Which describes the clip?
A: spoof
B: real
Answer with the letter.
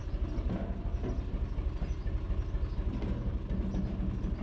B